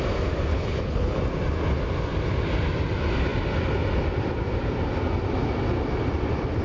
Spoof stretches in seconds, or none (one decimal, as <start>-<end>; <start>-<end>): 0.5-1.2